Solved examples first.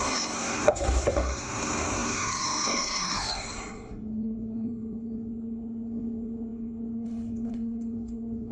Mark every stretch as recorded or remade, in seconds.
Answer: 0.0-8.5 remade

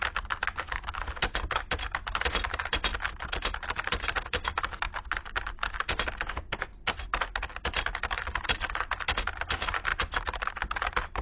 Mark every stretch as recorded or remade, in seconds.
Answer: 0.0-11.2 recorded